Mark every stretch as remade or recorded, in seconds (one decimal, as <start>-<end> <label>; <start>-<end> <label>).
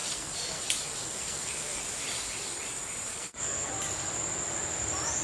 0.0-0.6 remade; 0.6-1.0 recorded; 1.0-1.8 remade; 1.8-3.1 recorded; 3.1-3.7 remade; 3.7-5.2 recorded